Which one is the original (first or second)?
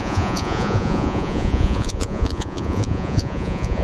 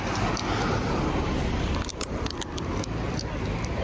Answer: second